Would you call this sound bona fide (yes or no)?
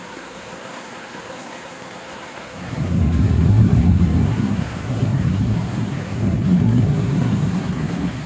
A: no